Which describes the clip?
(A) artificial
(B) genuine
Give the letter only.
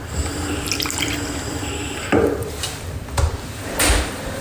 A